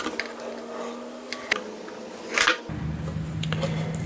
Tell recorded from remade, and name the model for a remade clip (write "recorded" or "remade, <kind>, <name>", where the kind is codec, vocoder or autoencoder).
recorded